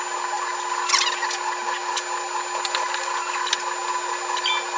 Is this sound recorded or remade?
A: recorded